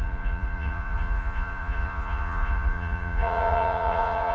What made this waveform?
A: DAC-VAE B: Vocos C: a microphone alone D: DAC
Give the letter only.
B